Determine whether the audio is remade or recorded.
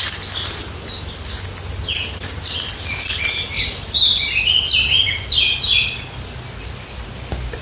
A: recorded